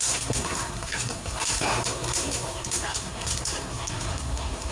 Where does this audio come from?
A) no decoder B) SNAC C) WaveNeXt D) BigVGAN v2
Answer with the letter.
B